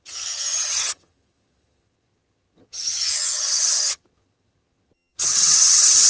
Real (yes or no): no